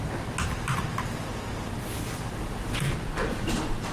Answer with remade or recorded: recorded